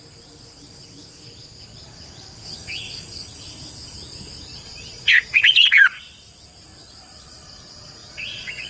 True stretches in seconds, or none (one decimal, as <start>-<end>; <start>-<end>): 0.0-4.5; 6.0-8.0